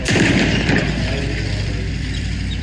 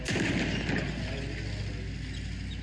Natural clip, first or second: second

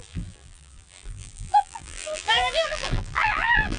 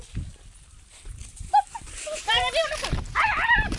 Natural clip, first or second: second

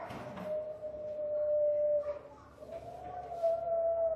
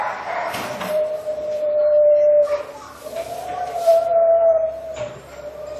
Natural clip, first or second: first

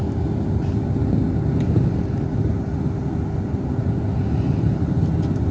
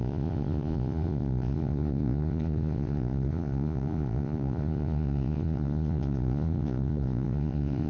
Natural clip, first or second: first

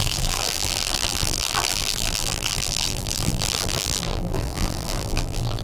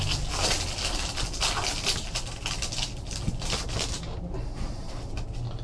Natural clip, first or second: second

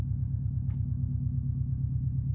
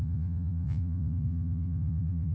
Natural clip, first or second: first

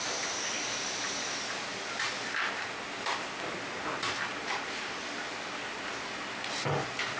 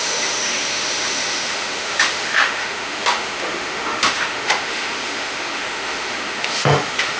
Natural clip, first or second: first